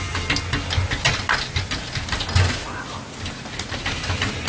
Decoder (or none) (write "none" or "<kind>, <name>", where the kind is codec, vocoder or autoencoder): none